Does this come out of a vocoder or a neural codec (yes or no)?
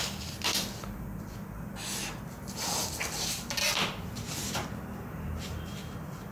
yes